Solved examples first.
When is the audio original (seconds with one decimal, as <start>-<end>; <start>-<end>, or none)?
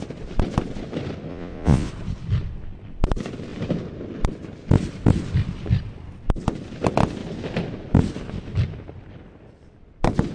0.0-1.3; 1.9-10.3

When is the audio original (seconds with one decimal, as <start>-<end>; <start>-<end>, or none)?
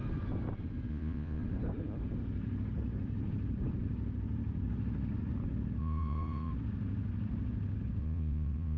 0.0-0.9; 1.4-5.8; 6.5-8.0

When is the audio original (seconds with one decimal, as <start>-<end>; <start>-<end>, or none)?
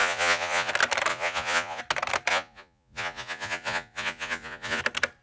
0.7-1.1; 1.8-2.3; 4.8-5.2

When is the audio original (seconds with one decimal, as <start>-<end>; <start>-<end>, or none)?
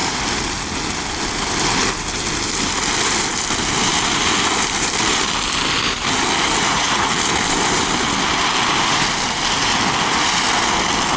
0.0-6.6; 7.1-11.2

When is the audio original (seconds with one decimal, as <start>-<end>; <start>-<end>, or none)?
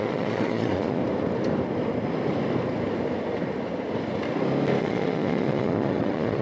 1.0-4.8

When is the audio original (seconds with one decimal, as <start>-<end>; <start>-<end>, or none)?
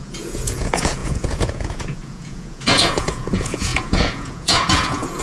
none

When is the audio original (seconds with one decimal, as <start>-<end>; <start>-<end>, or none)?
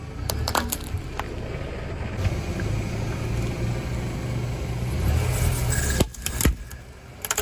0.0-7.4